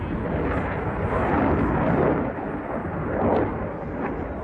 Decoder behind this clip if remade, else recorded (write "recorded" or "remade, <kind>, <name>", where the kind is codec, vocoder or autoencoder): remade, vocoder, BigVGAN v2